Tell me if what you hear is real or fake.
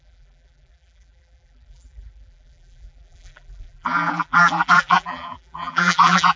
fake